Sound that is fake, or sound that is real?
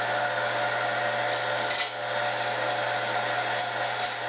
real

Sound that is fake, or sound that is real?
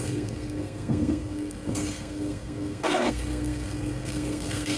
fake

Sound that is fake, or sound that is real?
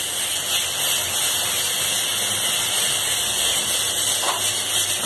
real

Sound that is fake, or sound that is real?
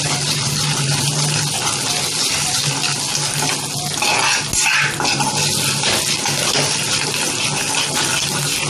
real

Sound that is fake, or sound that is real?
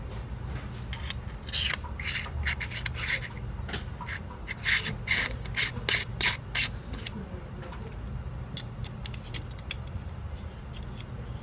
real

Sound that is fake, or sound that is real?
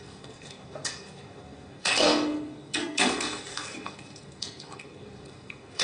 fake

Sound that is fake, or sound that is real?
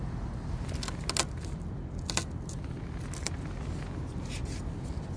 real